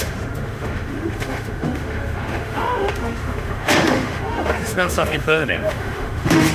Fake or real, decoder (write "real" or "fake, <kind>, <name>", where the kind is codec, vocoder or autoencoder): fake, autoencoder, DAC-VAE